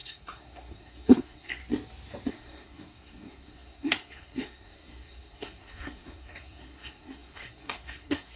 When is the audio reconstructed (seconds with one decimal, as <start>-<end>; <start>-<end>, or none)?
0.0-1.6; 2.3-8.4